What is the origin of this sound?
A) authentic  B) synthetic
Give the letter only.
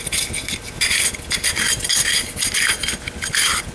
A